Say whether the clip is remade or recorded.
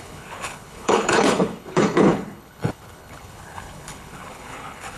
remade